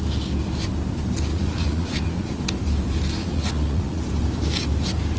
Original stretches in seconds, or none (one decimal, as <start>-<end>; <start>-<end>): 0.0-1.3; 2.4-3.2; 4.0-5.2